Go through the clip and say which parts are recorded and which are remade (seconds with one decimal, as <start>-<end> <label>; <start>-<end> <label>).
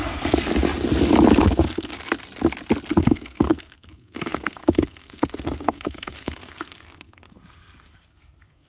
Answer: 0.0-0.5 remade; 0.5-1.4 recorded; 1.4-1.9 remade; 1.9-2.9 recorded; 2.9-8.7 remade